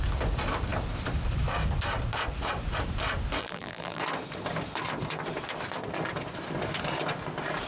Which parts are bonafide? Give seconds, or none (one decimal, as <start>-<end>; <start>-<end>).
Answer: 0.0-3.4; 4.0-7.7